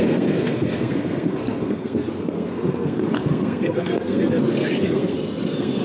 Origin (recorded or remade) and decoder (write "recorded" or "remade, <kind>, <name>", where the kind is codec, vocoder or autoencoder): remade, codec, SNAC